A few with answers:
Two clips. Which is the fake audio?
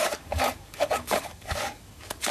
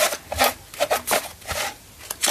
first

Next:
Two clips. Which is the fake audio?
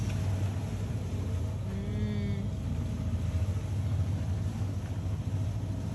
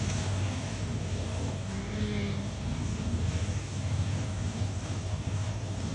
second